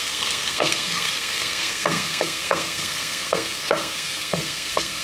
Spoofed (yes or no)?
yes